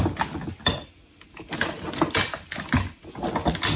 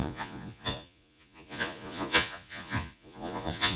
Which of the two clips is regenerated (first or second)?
second